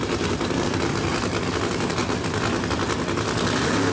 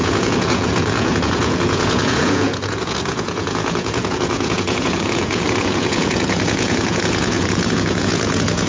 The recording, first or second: first